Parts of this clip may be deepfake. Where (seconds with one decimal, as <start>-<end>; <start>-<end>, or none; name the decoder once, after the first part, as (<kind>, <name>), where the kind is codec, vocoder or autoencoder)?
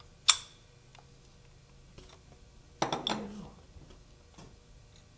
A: none